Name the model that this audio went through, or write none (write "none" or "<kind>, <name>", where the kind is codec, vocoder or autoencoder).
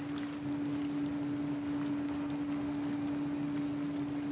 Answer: none